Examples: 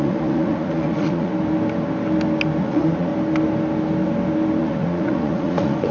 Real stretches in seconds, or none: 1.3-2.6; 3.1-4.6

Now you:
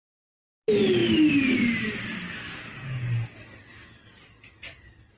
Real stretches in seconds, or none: 0.0-5.2